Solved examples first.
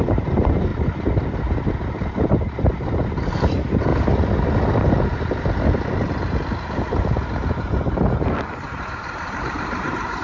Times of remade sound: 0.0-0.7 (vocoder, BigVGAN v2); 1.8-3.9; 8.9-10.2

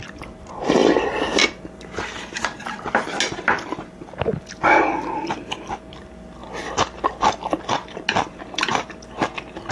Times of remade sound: none

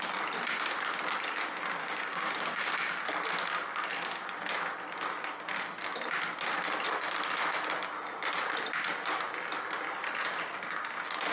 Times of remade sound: 1.8-2.7 (codec, DAC)

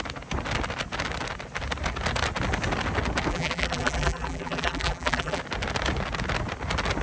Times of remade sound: 3.3-5.4 (vocoder, BigVGAN v2)

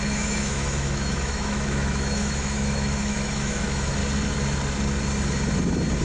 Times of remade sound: 0.0-4.0 (autoencoder, DAC-VAE)

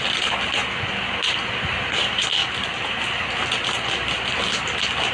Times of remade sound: 2.4-3.0 (vocoder, BigVGAN v2)